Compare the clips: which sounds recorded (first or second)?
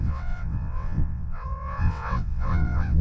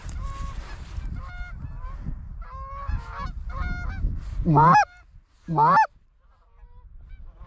second